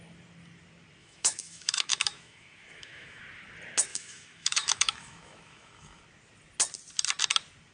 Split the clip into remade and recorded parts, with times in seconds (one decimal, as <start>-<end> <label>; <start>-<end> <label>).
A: 0.0-1.0 recorded; 1.0-3.2 remade; 3.2-3.9 recorded; 3.9-6.0 remade; 6.0-7.7 recorded